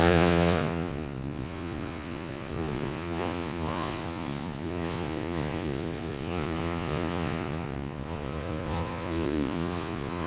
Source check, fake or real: fake